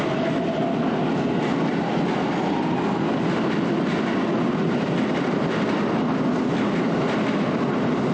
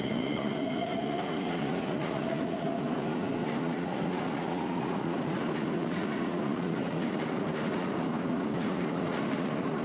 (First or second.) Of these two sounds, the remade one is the second